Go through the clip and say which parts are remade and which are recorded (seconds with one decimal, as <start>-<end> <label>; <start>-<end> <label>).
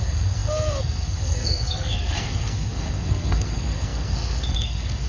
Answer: 0.0-5.1 remade